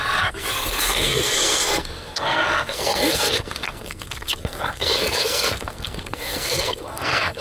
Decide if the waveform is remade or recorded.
remade